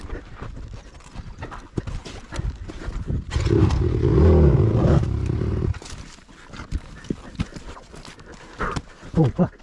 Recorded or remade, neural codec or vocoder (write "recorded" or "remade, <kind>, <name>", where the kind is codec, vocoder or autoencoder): recorded